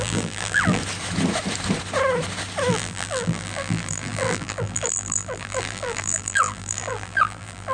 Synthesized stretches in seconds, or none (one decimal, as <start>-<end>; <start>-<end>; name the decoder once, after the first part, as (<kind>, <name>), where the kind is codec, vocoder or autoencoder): 0.0-0.8 (vocoder, BigVGAN v2); 2.7-7.7